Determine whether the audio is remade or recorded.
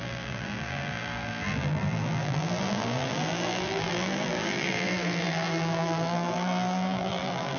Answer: remade